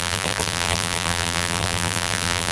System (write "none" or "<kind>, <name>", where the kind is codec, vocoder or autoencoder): vocoder, BigVGAN v2